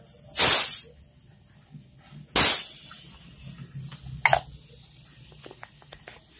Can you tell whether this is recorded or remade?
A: recorded